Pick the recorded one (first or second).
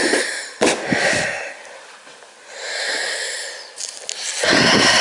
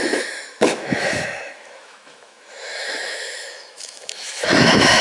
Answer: first